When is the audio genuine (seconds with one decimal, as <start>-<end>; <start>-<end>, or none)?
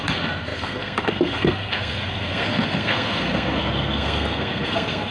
none